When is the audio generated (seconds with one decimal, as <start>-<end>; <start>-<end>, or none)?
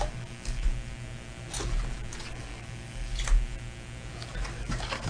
0.0-0.7; 2.3-3.1; 4.5-5.1